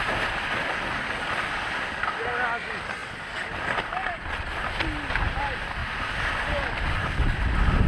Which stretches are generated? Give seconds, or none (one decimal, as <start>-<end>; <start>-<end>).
none